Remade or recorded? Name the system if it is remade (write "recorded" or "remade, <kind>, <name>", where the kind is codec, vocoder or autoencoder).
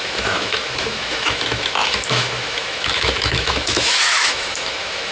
remade, autoencoder, DAC-VAE